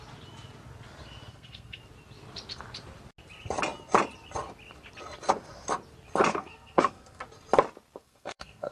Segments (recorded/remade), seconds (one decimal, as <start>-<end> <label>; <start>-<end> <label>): 0.0-1.3 recorded; 1.3-1.8 remade; 1.8-6.3 recorded; 6.3-7.2 remade; 7.2-8.0 recorded; 8.0-8.7 remade